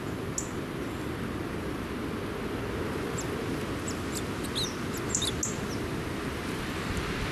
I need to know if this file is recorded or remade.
recorded